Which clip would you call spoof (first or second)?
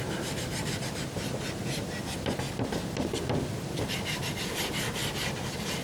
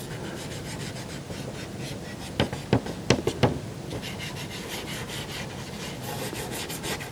first